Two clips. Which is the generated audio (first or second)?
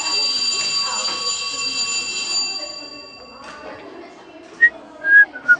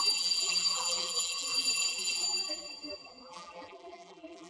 second